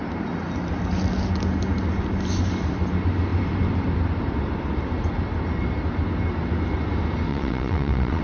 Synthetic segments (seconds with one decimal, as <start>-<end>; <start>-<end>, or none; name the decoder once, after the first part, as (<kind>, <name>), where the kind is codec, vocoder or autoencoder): 7.3-8.2 (vocoder, WaveNeXt)